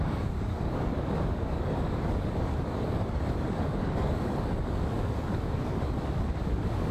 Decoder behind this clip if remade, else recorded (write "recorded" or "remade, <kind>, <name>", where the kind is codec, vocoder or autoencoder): remade, codec, DAC